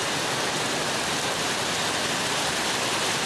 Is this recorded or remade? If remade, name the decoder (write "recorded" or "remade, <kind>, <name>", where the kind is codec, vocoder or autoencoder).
recorded